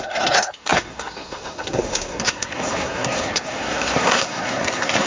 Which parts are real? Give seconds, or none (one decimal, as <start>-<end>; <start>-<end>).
none